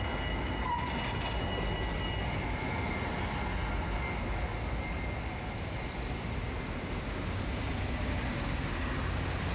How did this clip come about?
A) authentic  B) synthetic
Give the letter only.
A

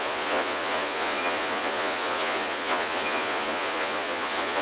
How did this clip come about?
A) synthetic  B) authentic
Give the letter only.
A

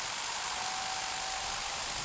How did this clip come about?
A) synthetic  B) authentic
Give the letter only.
B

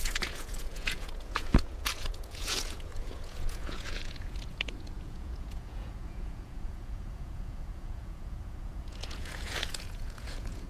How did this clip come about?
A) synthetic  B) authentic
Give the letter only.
A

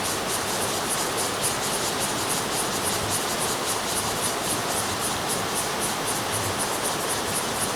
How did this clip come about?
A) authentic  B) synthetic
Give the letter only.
A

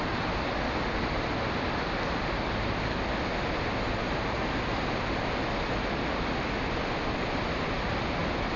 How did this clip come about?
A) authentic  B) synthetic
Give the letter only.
A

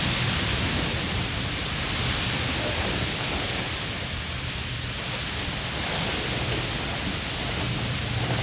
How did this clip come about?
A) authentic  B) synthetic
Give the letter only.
A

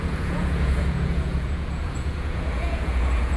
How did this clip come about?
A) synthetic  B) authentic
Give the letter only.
A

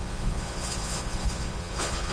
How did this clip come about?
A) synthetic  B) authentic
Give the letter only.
A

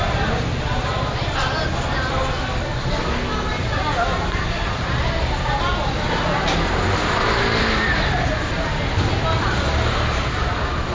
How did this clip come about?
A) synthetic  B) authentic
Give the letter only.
B